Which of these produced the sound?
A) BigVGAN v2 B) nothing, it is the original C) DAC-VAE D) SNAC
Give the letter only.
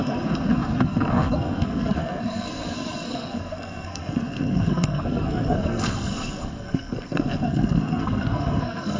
D